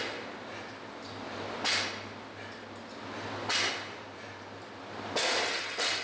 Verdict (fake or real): real